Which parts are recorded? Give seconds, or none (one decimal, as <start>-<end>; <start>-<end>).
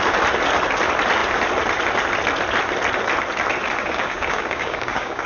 0.0-3.8